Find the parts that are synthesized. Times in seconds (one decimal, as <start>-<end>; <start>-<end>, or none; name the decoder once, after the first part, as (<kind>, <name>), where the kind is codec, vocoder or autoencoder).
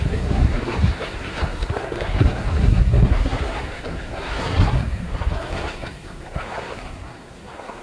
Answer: 0.0-7.8 (codec, SNAC)